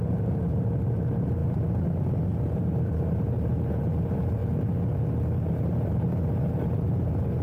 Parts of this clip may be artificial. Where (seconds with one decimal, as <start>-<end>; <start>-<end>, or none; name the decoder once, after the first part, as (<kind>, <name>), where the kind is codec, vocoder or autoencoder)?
0.0-4.4 (vocoder, BigVGAN v2); 5.5-7.4